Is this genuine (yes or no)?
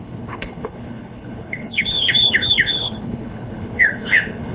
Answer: no